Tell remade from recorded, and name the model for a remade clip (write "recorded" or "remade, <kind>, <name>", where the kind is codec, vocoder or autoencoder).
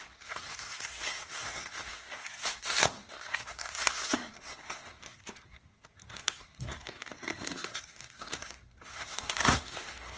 remade, codec, SNAC